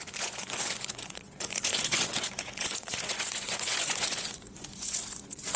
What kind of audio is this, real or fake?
fake